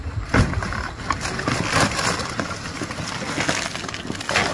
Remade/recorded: recorded